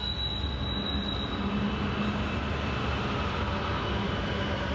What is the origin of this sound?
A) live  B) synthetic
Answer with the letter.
A